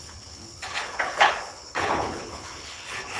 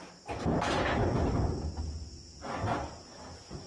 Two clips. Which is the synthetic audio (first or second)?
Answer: first